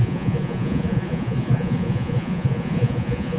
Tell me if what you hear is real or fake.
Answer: fake